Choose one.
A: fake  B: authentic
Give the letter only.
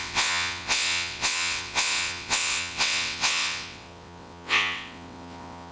A